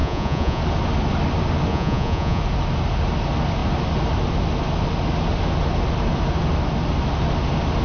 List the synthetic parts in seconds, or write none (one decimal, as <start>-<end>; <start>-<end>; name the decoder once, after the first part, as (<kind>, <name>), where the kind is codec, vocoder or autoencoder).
0.0-0.6 (vocoder, Vocos); 1.7-2.4

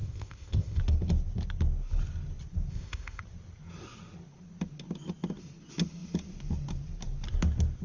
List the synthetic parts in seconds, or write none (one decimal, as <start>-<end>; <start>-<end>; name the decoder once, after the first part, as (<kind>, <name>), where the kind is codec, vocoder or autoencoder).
0.0-0.8 (codec, ZipCodec); 2.7-3.2

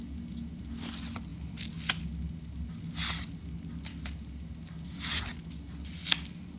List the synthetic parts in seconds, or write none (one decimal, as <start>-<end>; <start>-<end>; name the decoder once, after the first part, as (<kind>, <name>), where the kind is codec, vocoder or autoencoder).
none

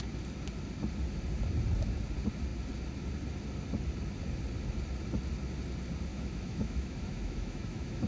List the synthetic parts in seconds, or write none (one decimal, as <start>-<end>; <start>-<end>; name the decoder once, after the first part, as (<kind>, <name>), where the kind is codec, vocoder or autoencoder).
6.1-8.1 (autoencoder, DAC-VAE)

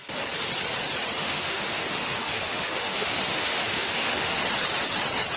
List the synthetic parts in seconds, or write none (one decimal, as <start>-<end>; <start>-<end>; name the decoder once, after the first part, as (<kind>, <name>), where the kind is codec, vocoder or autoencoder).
1.2-4.4 (autoencoder, DAC-VAE)

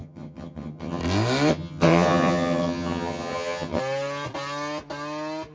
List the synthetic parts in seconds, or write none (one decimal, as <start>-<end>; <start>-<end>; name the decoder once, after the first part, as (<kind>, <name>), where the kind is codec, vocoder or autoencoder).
0.0-1.0 (vocoder, HiFi-GAN); 1.5-3.8